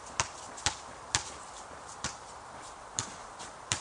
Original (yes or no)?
no